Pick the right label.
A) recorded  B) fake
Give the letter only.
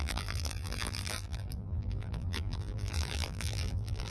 B